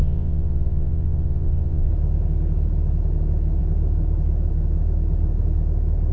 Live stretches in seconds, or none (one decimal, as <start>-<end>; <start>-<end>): 1.9-6.1